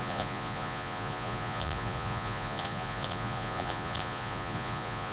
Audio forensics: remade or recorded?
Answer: remade